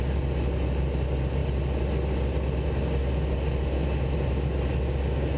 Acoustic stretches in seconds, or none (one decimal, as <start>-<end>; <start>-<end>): 0.0-5.4